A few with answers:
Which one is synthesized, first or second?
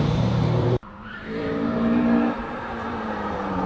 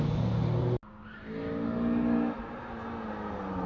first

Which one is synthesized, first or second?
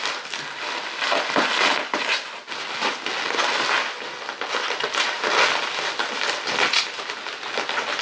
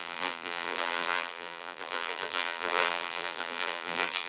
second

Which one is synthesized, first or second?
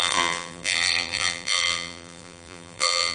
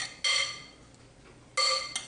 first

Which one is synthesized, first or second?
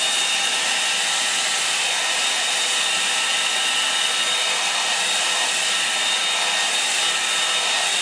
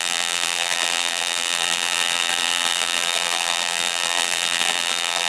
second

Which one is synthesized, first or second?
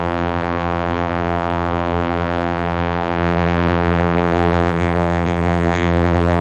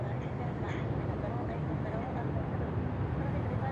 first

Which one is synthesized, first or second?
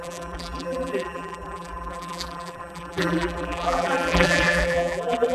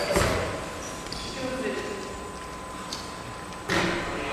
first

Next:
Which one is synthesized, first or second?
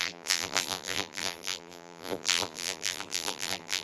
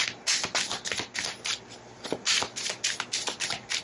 first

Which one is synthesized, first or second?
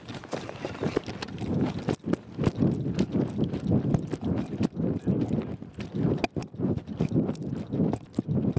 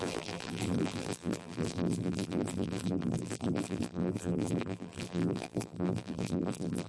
second